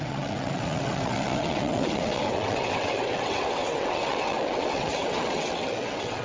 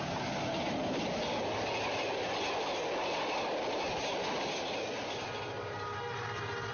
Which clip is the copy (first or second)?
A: first